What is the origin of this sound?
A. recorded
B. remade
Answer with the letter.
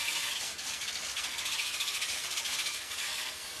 B